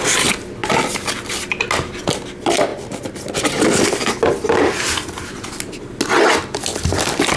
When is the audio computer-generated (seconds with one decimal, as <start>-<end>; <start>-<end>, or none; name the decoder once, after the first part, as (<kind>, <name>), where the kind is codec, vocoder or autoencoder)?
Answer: none